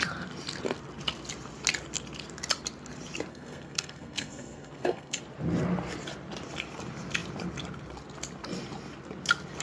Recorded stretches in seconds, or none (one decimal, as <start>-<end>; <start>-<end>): 0.0-3.3; 5.2-9.6